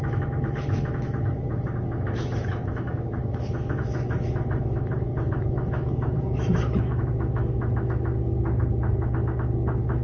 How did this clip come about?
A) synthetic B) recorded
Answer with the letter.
A